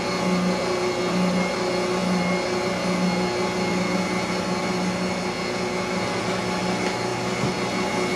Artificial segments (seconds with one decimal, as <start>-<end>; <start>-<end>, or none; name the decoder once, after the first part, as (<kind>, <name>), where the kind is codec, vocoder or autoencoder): none